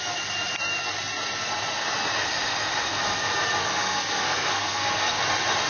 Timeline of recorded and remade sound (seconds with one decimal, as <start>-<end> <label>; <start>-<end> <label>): 0.0-3.6 recorded; 3.6-5.2 remade; 5.2-5.7 recorded